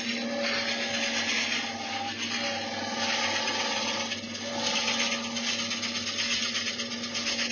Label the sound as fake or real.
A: real